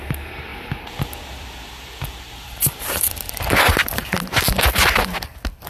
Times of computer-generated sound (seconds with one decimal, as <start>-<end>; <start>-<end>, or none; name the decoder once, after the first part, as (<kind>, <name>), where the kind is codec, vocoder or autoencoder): 0.5-3.9 (vocoder, BigVGAN v2)